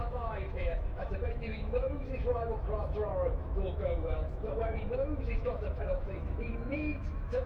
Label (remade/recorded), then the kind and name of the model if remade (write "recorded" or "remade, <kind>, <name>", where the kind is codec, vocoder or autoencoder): remade, autoencoder, DAC-VAE